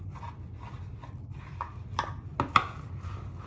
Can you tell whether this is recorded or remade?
recorded